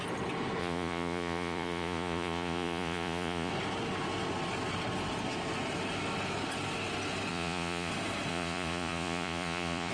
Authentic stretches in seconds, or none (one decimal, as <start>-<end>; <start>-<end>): 0.0-0.6; 3.5-7.3; 7.9-8.3